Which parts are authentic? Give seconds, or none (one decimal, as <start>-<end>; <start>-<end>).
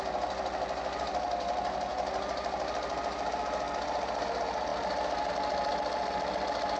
0.0-6.8